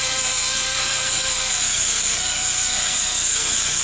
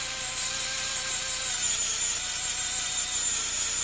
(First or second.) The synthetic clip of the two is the first